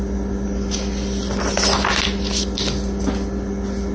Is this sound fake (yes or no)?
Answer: no